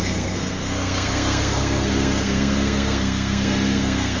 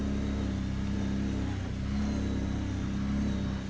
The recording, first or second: second